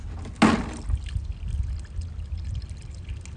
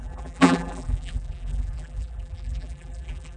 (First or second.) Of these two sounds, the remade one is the second